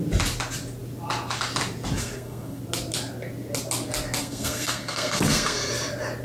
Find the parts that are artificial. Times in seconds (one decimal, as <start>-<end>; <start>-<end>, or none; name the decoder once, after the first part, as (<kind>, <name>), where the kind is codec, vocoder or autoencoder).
2.0-2.6 (codec, SNAC); 4.2-5.7